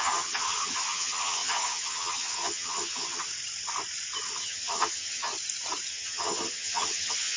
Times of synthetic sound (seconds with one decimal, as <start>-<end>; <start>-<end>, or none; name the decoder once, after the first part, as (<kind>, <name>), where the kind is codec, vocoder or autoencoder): 0.0-3.3 (vocoder, HiFi-GAN); 4.4-5.3; 5.9-7.4